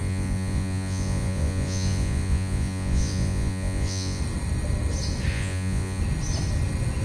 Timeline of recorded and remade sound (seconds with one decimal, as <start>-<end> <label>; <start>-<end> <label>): 0.0-4.2 remade; 4.2-5.3 recorded; 5.3-6.0 remade; 6.0-7.0 recorded